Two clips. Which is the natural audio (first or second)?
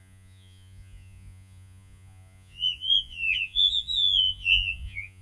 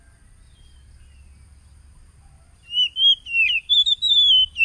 second